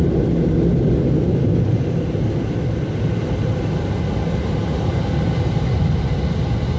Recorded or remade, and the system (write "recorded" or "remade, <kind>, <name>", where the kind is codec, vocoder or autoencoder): recorded